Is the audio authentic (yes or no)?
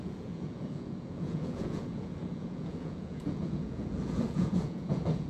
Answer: no